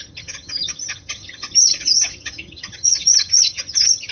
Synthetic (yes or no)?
yes